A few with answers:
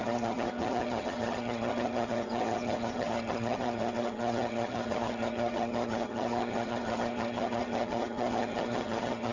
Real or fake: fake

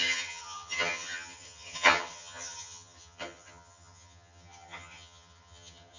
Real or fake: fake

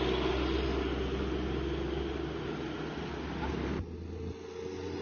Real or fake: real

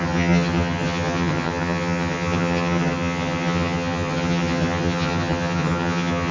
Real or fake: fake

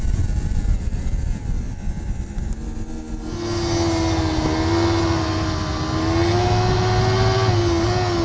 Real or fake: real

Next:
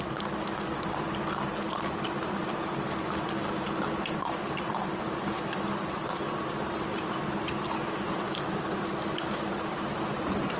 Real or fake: real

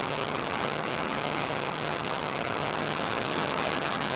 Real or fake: fake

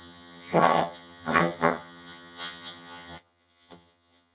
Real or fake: fake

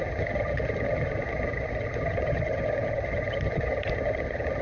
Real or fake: fake